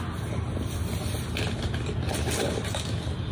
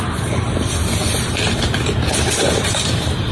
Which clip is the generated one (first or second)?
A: second